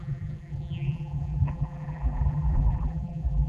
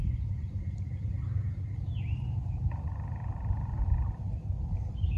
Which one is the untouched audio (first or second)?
second